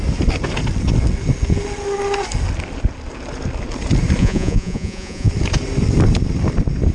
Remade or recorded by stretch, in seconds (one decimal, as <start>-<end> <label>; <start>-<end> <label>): 0.0-4.2 recorded; 4.2-5.3 remade; 5.3-6.9 recorded